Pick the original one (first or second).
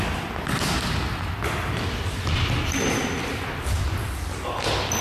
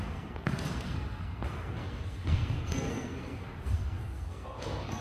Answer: first